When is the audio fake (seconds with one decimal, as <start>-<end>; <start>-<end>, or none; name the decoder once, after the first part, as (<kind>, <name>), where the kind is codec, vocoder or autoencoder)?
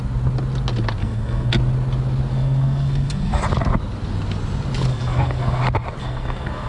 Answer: 1.0-1.5 (codec, SNAC); 2.3-3.4; 4.9-5.6; 6.0-6.7